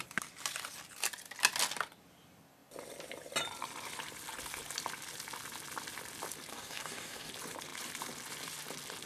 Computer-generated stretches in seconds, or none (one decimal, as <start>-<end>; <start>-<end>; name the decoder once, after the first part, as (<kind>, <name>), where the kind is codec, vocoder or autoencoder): 6.5-7.3 (codec, DAC)